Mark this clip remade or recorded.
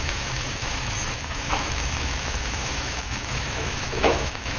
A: remade